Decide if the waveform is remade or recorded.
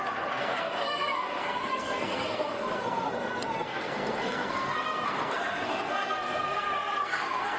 remade